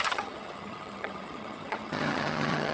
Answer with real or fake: fake